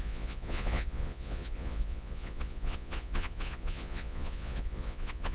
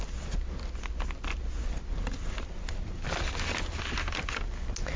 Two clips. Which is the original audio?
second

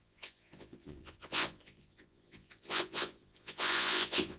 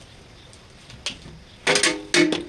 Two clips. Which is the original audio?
second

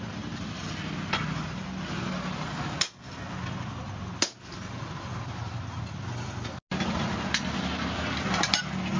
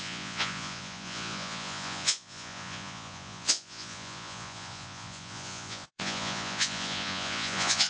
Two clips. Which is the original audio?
first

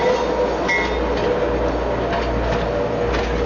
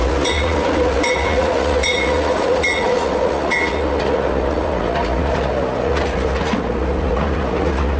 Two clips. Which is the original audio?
first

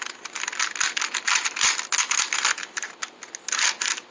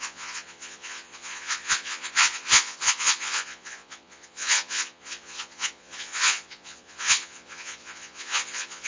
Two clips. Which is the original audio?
first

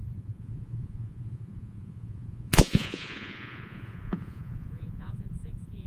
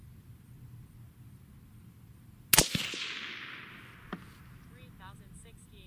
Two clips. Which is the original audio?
second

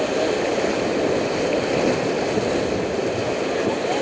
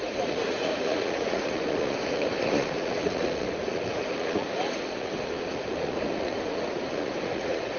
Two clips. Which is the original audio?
first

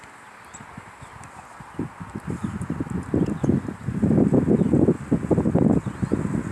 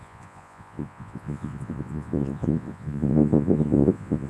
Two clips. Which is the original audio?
first